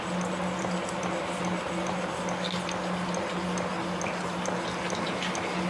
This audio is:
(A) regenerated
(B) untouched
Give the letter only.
B